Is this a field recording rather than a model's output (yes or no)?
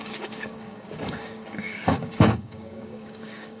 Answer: no